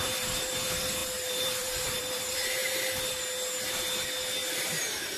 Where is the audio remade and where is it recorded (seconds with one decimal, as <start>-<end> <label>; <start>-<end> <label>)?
0.0-2.6 remade; 2.6-4.5 recorded; 4.5-5.2 remade